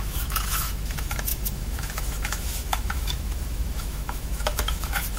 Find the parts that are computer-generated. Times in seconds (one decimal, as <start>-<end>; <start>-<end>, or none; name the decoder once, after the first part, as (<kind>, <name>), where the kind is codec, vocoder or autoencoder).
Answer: 0.0-5.2 (autoencoder, DAC-VAE)